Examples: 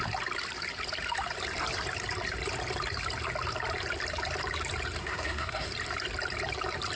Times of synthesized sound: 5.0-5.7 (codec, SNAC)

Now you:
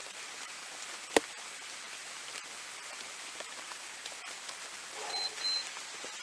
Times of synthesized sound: none

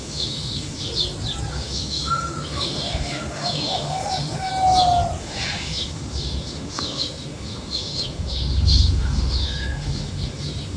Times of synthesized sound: 0.0-0.9 (autoencoder, DAC-VAE); 1.5-4.5; 5.2-10.8

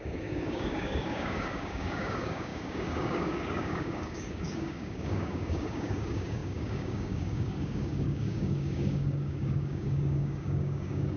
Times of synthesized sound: 0.0-11.2 (codec, DAC)